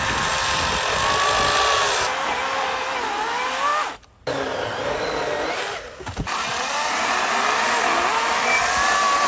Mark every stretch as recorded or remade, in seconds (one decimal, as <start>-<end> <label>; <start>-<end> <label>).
0.0-9.3 recorded